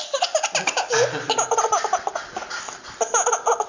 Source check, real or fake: real